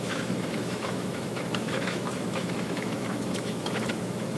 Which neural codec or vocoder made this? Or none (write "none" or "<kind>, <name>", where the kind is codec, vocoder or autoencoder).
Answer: autoencoder, DAC-VAE